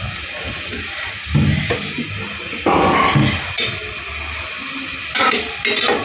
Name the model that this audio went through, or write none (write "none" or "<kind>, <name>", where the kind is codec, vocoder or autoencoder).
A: none